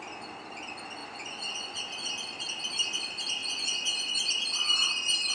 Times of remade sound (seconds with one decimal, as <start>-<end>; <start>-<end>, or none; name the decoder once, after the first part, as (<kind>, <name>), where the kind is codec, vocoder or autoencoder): 1.0-1.8 (vocoder, Vocos); 3.4-4.1